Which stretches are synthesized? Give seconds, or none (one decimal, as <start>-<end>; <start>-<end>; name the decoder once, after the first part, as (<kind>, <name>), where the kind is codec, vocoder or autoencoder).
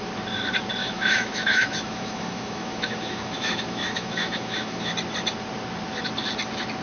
0.8-4.9 (autoencoder, DAC-VAE)